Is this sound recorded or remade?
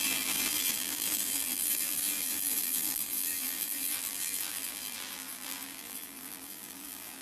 remade